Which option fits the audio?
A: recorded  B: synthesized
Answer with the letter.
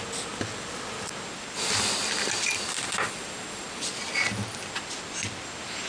A